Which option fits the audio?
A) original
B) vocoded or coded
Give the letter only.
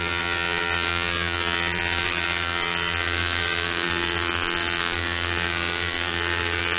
B